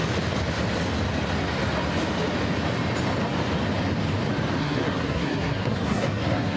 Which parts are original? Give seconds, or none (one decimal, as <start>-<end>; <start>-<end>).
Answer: 0.0-4.6